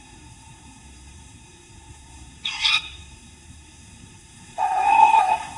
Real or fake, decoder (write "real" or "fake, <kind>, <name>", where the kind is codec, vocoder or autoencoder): fake, codec, SNAC